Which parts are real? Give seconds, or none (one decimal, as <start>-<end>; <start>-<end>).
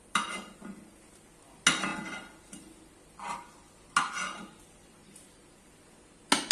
0.0-6.5